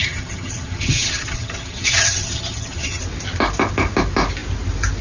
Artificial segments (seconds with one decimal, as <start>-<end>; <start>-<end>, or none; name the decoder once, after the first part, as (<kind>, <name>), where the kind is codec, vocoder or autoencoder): 0.0-3.0 (vocoder, HiFi-GAN)